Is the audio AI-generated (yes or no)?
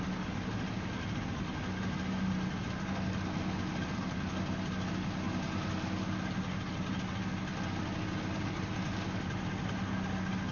no